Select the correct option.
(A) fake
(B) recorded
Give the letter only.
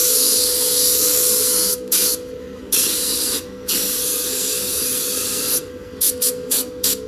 A